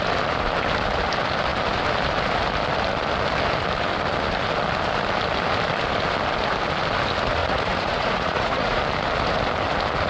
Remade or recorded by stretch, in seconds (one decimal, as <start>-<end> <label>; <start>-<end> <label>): 0.0-7.4 recorded; 7.4-8.8 remade; 8.8-10.1 recorded